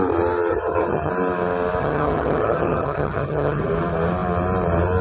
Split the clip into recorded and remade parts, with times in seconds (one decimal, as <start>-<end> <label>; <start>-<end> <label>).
0.0-0.5 recorded; 0.5-1.1 remade; 1.1-1.8 recorded; 1.8-3.6 remade; 3.6-5.0 recorded